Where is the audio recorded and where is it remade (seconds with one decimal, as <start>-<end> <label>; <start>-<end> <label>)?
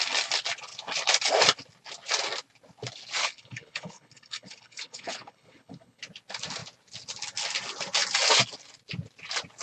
0.0-3.2 recorded; 3.2-6.0 remade; 6.0-9.6 recorded